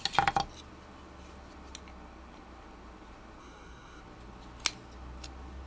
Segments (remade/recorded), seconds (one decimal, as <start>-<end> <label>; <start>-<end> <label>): 0.0-3.4 recorded; 3.4-4.0 remade; 4.0-5.7 recorded